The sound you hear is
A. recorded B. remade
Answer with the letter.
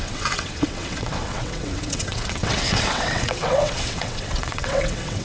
B